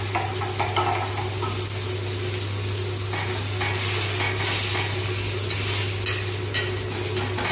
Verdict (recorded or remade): recorded